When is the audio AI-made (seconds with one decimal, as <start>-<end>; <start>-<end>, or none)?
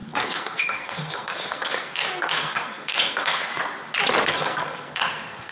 0.0-3.5; 4.2-5.5